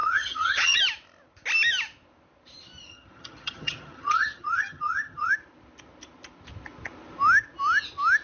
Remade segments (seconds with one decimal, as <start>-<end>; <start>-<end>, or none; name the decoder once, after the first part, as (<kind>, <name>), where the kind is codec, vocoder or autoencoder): 0.0-0.8 (vocoder, HiFi-GAN); 2.9-5.3